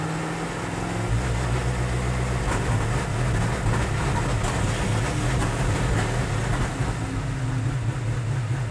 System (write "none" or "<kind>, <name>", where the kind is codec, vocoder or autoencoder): none